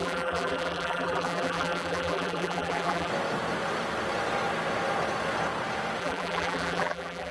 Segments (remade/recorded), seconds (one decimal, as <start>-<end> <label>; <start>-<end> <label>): 0.0-3.1 remade; 3.1-6.0 recorded; 6.0-7.3 remade